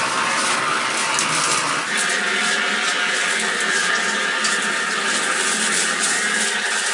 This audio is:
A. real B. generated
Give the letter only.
A